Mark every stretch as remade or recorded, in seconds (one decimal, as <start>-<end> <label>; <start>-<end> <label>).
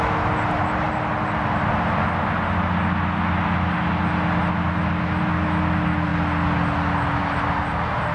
0.0-8.1 recorded